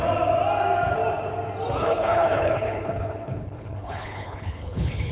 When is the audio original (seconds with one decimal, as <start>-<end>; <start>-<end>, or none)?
0.0-1.8